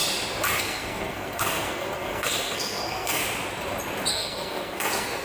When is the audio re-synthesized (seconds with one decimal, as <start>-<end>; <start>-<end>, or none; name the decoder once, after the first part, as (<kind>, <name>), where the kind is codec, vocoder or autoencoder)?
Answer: 0.6-3.2 (codec, SNAC); 4.1-5.2